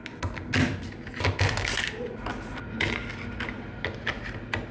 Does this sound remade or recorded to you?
recorded